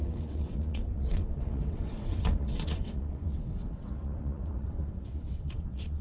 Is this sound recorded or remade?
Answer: remade